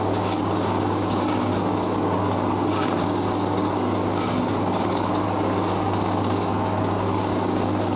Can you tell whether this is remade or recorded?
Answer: remade